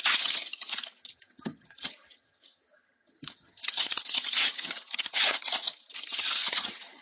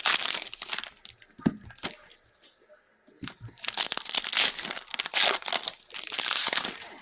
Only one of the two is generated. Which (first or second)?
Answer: first